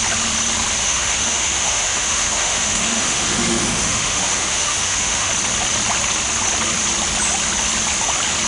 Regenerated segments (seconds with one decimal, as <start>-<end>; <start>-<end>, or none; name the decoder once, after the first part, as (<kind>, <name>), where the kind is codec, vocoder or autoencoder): 0.8-5.3 (autoencoder, DAC-VAE)